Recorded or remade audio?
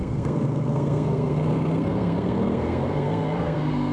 remade